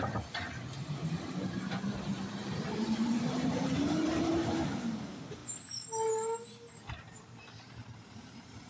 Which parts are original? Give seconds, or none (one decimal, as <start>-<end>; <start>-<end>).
5.4-6.9